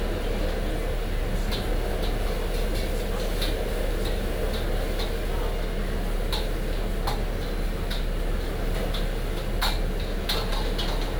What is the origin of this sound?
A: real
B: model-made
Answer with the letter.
A